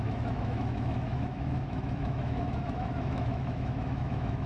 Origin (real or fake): fake